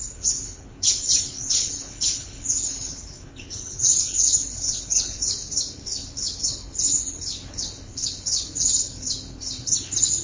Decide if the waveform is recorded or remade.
remade